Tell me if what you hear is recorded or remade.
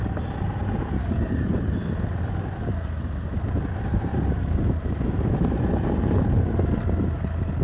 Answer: recorded